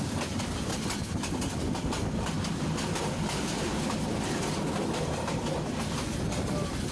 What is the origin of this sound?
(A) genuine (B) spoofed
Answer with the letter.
A